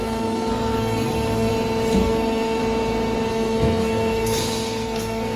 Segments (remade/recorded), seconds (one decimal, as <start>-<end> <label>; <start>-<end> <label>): 0.0-1.5 remade; 1.5-2.0 recorded; 2.0-2.6 remade; 2.6-3.3 recorded; 3.3-5.4 remade